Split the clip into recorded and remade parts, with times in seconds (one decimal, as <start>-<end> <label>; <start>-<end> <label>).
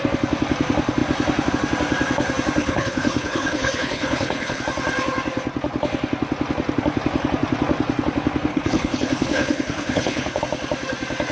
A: 0.0-2.6 recorded; 2.6-4.6 remade; 4.6-8.5 recorded; 8.5-10.4 remade; 10.4-11.3 recorded